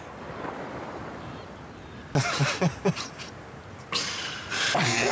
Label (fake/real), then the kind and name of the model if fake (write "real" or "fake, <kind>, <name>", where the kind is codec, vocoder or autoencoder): real